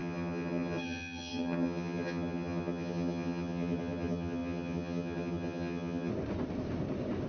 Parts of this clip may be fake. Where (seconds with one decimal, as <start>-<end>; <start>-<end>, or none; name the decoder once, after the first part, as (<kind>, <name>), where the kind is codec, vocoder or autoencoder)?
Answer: 0.0-6.1 (vocoder, HiFi-GAN)